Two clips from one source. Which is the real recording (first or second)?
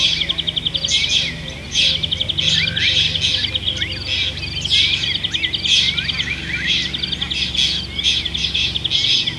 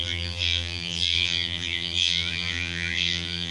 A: first